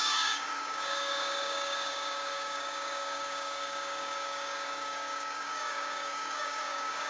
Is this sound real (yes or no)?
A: no